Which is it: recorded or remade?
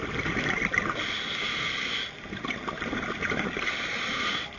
recorded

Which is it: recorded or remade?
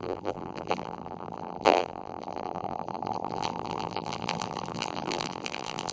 remade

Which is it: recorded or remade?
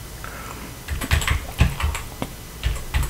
recorded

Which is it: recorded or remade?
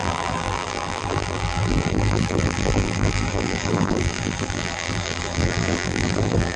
remade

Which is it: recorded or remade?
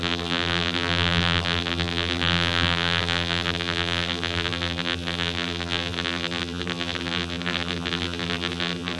remade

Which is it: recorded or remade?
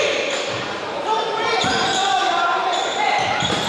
remade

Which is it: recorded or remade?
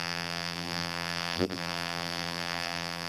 remade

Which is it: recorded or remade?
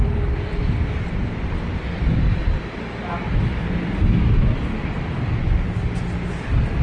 remade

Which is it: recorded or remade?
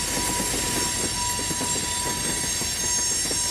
recorded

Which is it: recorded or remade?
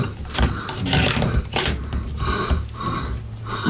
remade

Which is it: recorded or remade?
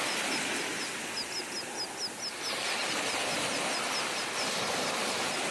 recorded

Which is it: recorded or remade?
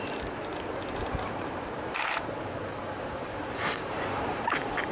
remade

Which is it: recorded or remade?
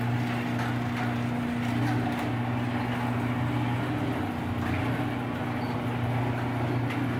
recorded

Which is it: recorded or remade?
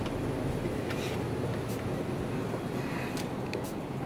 recorded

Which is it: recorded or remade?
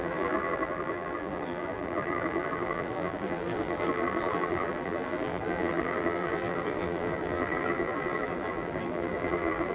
remade